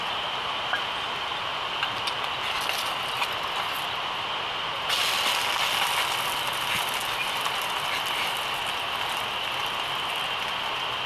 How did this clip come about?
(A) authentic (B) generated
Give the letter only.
A